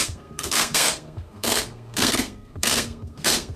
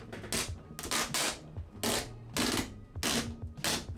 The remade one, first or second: first